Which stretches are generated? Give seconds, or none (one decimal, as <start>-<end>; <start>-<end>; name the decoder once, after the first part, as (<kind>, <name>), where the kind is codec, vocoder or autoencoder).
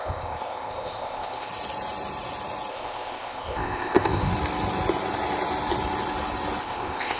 0.0-1.5 (codec, ZipCodec); 2.7-4.3; 6.6-7.2